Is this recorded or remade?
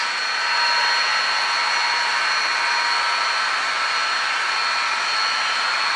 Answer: recorded